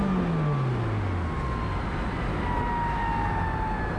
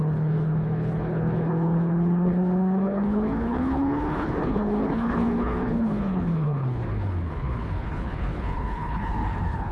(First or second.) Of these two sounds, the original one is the first